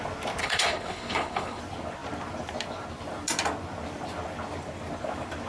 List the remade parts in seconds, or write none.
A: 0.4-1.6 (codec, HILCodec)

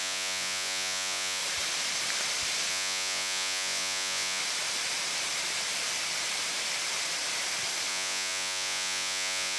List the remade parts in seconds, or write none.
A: 0.0-1.4 (vocoder, Vocos); 2.7-4.4; 7.9-9.6

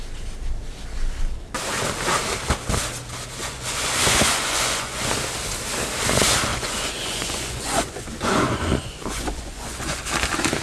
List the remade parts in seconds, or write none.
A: 3.4-5.1 (vocoder, Vocos); 6.5-10.0

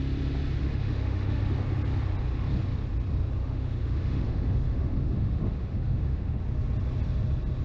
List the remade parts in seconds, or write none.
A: 0.6-1.4 (autoencoder, DAC-VAE); 3.4-6.4